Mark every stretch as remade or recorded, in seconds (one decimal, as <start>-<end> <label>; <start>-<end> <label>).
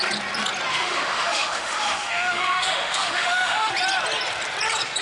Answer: 0.0-0.7 recorded; 0.7-3.7 remade; 3.7-5.0 recorded